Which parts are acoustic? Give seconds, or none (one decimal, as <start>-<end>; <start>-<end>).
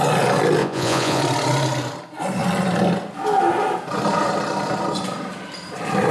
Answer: 0.0-0.6; 1.2-6.1